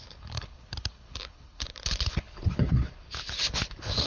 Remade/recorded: remade